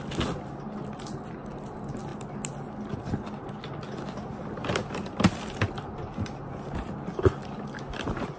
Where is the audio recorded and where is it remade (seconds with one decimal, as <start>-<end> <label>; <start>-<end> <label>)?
0.0-8.4 recorded

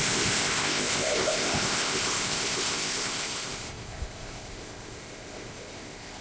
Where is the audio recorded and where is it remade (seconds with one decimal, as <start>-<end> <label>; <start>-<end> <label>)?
0.0-6.2 remade

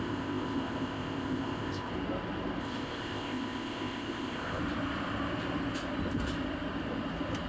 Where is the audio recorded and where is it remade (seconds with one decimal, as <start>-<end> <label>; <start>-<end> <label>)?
0.0-1.9 remade; 1.9-2.6 recorded; 2.6-4.6 remade; 4.6-7.5 recorded